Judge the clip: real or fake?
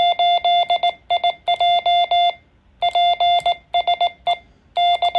real